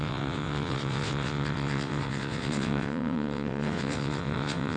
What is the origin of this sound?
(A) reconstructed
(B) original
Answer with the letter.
A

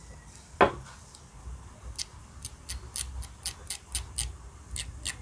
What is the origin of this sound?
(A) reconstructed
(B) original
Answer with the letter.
B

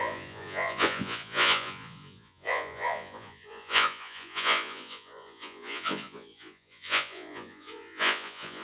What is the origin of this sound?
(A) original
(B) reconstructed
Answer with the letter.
B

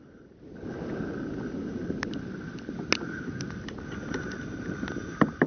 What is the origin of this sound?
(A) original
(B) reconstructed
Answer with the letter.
A